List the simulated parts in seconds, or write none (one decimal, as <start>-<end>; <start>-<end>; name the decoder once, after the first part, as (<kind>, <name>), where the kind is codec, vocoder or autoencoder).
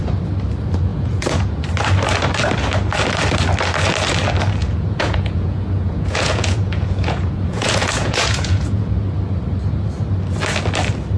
0.9-1.6 (vocoder, Vocos); 4.6-8.9